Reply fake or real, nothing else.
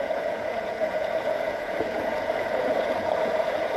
fake